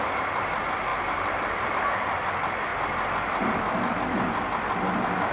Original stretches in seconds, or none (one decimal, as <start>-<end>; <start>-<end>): 0.0-5.3